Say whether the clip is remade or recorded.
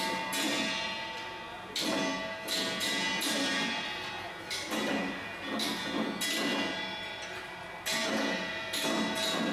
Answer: recorded